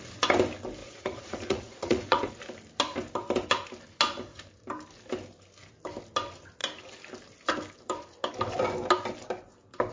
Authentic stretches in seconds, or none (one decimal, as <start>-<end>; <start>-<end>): 0.0-0.8; 2.3-9.9